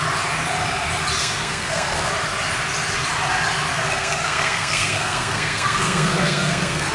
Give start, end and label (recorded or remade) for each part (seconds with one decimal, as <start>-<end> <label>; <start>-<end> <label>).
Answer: 0.0-1.2 recorded; 1.2-2.1 remade; 2.1-3.7 recorded; 3.7-6.9 remade